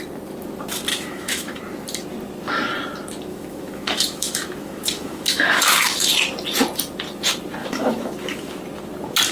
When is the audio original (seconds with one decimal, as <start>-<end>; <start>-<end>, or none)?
0.0-0.9; 1.6-3.3; 6.1-7.6; 8.6-9.3